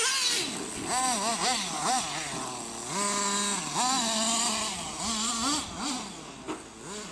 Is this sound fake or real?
real